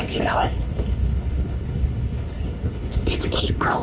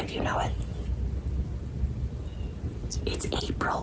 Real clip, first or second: second